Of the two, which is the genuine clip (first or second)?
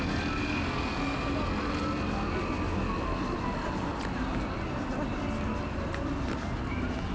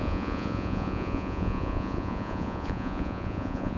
first